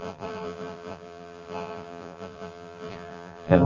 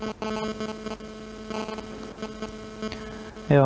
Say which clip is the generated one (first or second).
first